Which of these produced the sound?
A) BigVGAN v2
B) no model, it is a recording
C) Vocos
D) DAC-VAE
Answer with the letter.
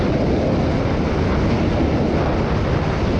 B